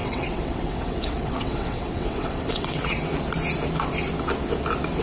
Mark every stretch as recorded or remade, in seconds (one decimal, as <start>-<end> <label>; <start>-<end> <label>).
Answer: 0.0-3.1 remade; 3.1-5.0 recorded

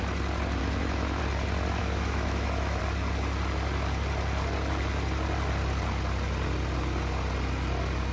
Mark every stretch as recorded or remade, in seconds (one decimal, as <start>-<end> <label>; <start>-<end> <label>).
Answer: 0.0-0.6 recorded; 0.6-1.2 remade; 1.2-1.8 recorded; 1.8-2.8 remade; 2.8-8.1 recorded

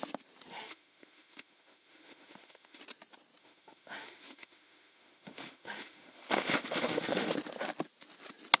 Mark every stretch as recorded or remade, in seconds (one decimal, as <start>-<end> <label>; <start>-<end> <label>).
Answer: 0.0-0.5 recorded; 0.5-2.8 remade; 2.8-3.4 recorded; 3.4-7.3 remade; 7.3-8.6 recorded

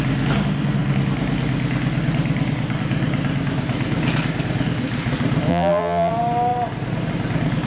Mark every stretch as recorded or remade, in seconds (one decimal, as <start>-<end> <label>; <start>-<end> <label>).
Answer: 0.0-5.5 recorded; 5.5-6.1 remade; 6.1-7.7 recorded

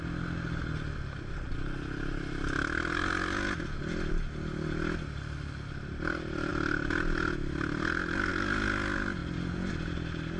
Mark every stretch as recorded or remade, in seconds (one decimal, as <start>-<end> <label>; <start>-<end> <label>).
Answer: 0.0-10.4 recorded